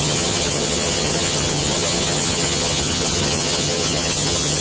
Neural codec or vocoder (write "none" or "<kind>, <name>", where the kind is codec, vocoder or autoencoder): vocoder, HiFi-GAN